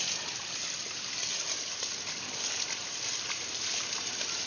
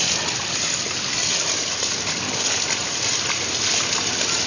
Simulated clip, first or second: first